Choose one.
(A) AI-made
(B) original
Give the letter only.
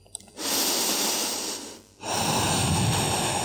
B